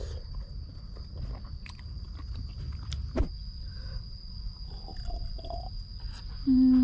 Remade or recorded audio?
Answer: recorded